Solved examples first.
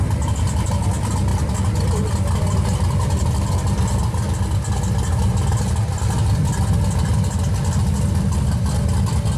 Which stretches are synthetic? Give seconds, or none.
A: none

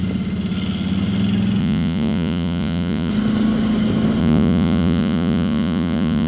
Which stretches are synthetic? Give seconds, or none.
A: 1.6-3.1 (vocoder, Vocos); 4.2-6.3

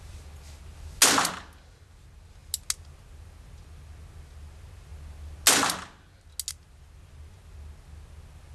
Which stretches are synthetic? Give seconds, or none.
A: none

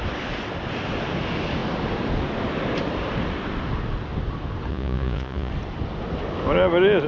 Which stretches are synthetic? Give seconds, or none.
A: 4.7-5.5 (vocoder, Vocos)

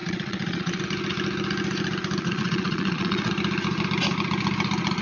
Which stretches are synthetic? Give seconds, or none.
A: 0.0-0.8 (vocoder, Vocos); 2.2-3.3

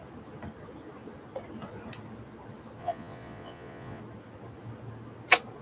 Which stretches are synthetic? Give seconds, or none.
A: 2.8-4.0 (vocoder, Vocos)